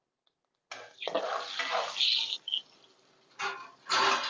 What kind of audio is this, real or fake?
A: real